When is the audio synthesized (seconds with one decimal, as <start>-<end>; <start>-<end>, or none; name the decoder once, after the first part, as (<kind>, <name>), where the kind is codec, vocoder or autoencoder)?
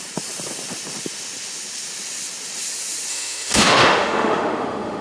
3.1-5.0 (autoencoder, DAC-VAE)